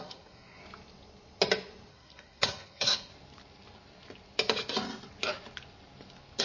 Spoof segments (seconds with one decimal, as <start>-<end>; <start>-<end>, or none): 0.0-0.6; 1.9-3.1